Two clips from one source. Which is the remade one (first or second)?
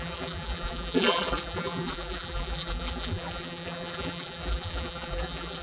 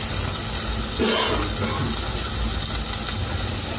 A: first